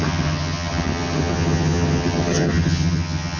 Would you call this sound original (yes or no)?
no